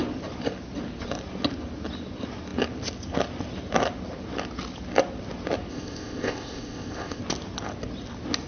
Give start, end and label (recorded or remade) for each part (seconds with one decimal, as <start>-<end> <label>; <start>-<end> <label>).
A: 0.0-5.7 recorded; 5.7-7.2 remade; 7.2-8.5 recorded